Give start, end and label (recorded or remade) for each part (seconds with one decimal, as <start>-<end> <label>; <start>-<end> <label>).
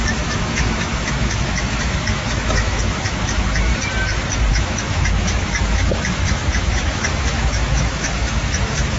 0.0-3.7 remade; 3.7-4.5 recorded; 4.5-9.0 remade